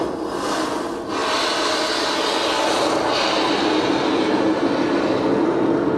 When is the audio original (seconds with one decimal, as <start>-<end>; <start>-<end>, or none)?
0.0-6.0